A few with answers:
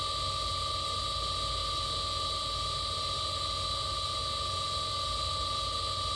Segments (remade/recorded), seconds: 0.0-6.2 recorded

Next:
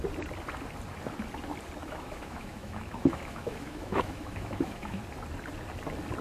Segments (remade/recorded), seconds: 0.0-1.8 recorded; 1.8-5.0 remade; 5.0-6.2 recorded